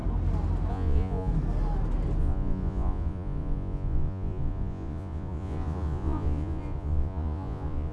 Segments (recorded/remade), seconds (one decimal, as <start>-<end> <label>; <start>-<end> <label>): 0.0-0.7 recorded; 0.7-1.3 remade; 1.3-2.2 recorded; 2.2-7.9 remade